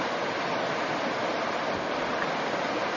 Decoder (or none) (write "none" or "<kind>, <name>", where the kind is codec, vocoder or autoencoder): none